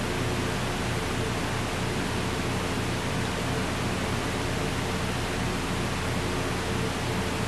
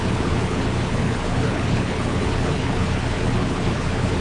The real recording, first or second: first